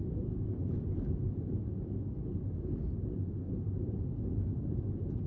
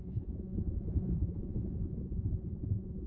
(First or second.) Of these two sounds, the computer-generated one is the second